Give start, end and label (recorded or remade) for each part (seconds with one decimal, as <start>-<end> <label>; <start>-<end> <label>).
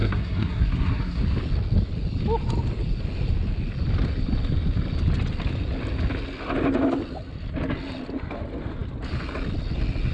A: 0.0-1.2 remade; 1.2-10.1 recorded